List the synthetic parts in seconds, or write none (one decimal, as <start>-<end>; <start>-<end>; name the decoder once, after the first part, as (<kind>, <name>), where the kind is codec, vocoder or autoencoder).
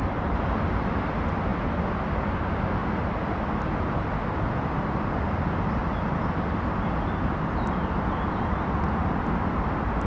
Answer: none